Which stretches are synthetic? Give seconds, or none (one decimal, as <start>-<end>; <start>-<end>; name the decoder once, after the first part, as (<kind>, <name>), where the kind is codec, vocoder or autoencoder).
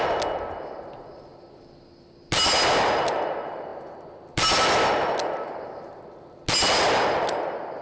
none